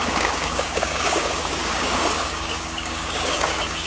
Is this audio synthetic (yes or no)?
yes